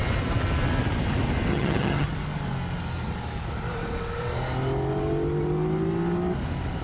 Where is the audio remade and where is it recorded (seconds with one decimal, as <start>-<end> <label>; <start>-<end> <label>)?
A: 0.0-1.5 recorded; 1.5-2.1 remade; 2.1-6.8 recorded